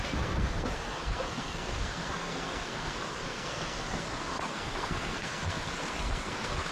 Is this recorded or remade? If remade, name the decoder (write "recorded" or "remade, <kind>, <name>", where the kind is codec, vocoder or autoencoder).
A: remade, codec, SNAC